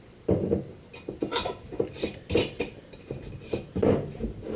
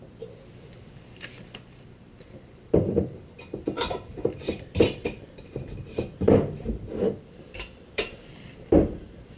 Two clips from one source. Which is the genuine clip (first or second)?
first